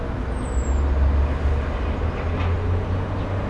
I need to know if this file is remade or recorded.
recorded